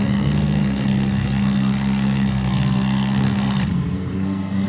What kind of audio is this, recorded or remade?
remade